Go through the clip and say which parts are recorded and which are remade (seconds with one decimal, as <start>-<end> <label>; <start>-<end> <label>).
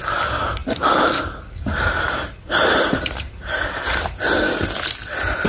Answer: 0.0-1.7 recorded; 1.7-4.2 remade; 4.2-5.5 recorded